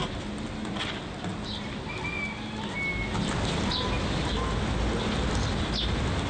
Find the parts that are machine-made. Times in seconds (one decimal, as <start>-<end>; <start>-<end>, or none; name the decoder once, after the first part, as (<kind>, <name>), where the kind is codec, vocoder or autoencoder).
none